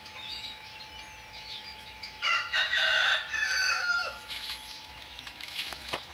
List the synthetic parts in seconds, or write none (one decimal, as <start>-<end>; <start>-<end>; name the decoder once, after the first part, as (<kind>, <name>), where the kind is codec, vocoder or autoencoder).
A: 0.0-0.7 (autoencoder, DAC-VAE); 1.3-3.1; 3.7-6.1